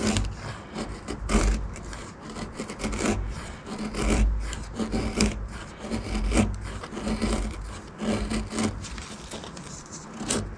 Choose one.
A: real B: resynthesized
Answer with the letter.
A